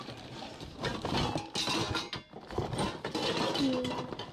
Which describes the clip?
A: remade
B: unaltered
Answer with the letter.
B